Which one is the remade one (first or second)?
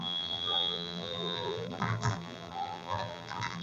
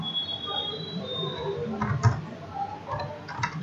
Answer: first